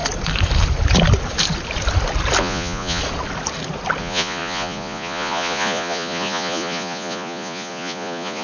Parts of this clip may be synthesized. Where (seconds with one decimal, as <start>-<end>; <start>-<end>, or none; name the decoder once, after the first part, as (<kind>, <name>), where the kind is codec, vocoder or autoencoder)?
2.4-3.0 (vocoder, Vocos); 4.0-8.4